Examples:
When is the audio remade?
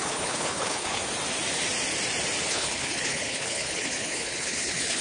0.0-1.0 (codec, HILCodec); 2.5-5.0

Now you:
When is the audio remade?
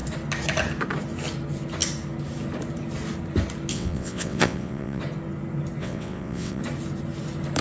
3.7-5.0 (vocoder, WaveNeXt); 5.8-6.6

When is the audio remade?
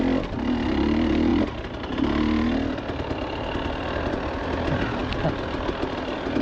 none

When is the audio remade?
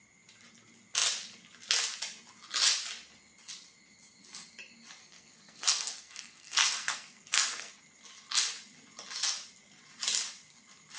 5.0-7.7 (codec, SNAC)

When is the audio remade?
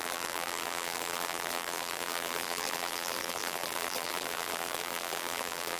0.0-5.8 (vocoder, BigVGAN v2)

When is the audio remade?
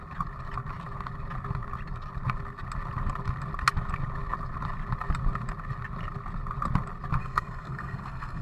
7.2-8.4 (codec, SNAC)